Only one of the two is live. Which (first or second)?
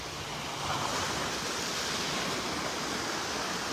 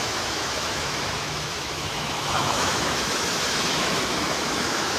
first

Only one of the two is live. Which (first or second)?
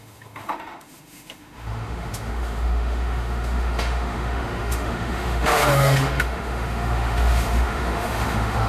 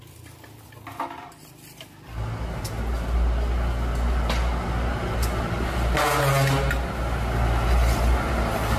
second